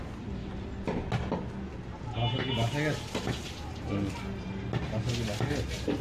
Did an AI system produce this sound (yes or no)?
no